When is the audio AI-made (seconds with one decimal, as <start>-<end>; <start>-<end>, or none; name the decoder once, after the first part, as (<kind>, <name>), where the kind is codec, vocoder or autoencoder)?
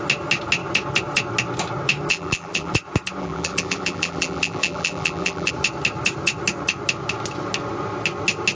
2.1-2.7 (vocoder, BigVGAN v2); 3.2-5.5